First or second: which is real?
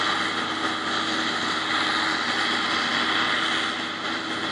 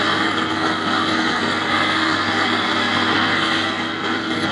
first